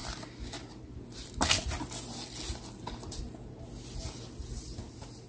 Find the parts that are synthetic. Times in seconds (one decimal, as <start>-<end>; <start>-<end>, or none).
none